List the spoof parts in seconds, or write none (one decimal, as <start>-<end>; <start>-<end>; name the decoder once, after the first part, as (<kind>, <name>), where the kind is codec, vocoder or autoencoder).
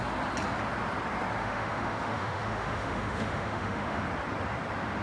1.4-4.0 (autoencoder, DAC-VAE)